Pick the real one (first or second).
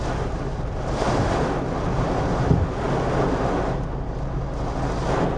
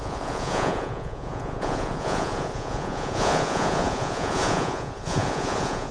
first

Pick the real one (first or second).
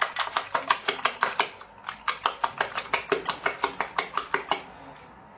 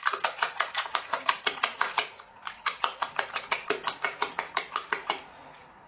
first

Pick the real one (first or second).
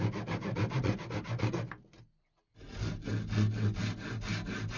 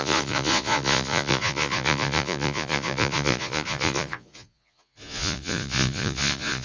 first